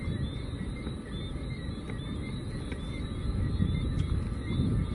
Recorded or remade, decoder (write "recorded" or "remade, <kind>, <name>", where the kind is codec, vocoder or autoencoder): recorded